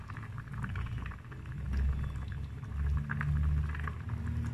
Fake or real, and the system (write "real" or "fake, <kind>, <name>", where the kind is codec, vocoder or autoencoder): real